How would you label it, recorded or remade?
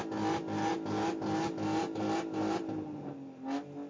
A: recorded